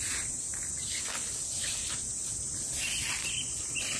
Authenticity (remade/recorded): recorded